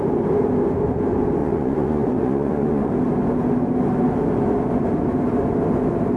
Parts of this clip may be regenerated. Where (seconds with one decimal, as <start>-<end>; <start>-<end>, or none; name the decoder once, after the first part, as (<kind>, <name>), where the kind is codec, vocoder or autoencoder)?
1.4-2.9 (vocoder, Vocos)